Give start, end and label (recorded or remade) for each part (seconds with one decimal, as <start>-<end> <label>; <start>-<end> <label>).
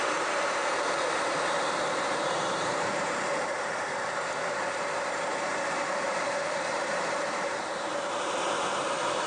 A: 0.0-0.6 remade; 0.6-2.1 recorded; 2.1-9.3 remade